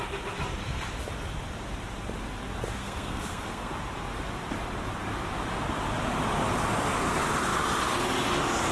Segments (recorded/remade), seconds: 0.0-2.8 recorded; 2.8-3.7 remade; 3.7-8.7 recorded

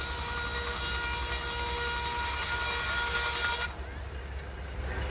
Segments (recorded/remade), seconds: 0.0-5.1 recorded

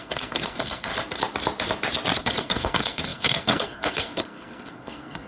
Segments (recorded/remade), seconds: 0.0-0.9 remade; 0.9-2.2 recorded; 2.2-5.3 remade

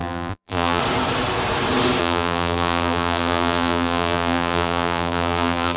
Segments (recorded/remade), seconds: 0.0-0.8 remade; 0.8-2.0 recorded; 2.0-5.8 remade

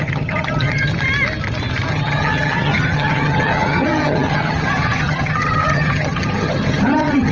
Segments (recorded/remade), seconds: 0.0-0.9 remade; 0.9-1.9 recorded; 1.9-7.3 remade

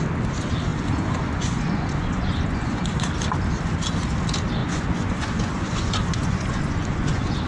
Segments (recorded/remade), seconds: 0.0-0.7 recorded; 0.7-3.0 remade; 3.0-4.6 recorded; 4.6-7.5 remade